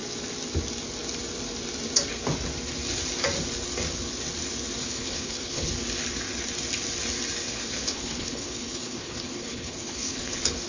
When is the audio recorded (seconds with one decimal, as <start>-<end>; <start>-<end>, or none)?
0.0-4.8; 5.7-7.4